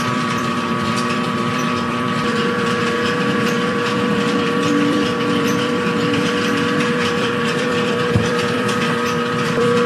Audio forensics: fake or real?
fake